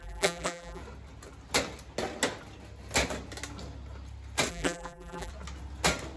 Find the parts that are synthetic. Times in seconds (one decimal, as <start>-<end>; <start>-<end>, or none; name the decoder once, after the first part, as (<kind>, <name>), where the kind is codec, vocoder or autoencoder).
0.0-0.8 (vocoder, BigVGAN v2); 4.5-5.3